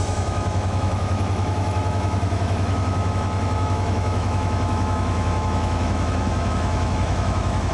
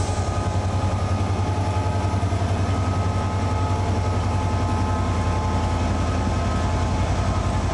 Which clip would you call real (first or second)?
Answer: second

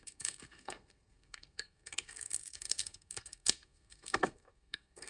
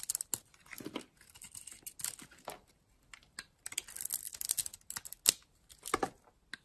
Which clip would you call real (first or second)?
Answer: second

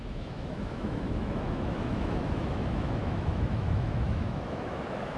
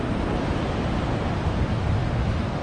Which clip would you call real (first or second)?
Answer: second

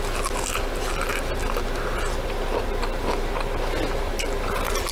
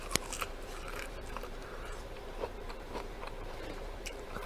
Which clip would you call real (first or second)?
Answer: first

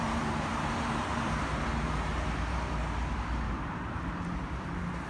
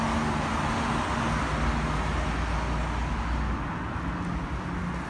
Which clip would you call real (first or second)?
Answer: second